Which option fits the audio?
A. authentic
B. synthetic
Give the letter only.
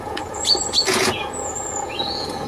B